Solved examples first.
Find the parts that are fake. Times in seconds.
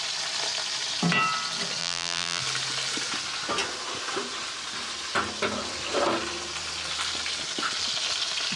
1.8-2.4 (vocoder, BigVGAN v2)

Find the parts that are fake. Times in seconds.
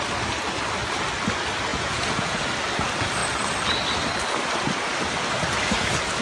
1.7-2.4 (vocoder, Vocos)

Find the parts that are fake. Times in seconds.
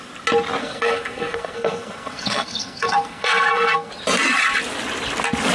0.6-3.9 (codec, SNAC)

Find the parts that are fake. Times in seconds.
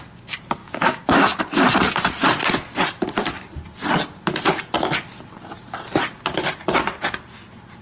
0.6-1.4 (autoencoder, DAC-VAE)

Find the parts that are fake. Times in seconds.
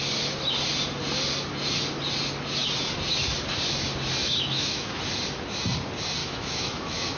4.2-5.0 (autoencoder, DAC-VAE); 6.2-7.2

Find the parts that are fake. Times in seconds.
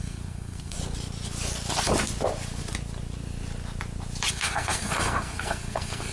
0.0-0.8 (codec, SNAC); 4.3-6.1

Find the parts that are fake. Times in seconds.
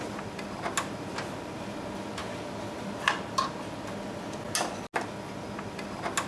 none